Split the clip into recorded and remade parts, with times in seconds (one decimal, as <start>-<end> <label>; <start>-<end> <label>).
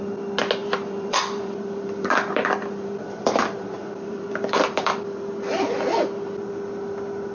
0.0-0.6 recorded; 0.6-5.0 remade; 5.0-7.3 recorded